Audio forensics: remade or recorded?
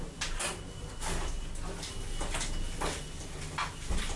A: recorded